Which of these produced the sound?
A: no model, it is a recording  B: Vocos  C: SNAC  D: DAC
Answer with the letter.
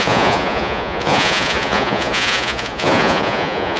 B